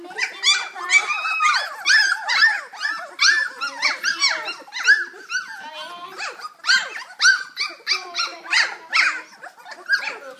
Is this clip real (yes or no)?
yes